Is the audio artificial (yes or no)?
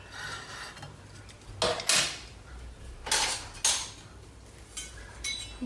no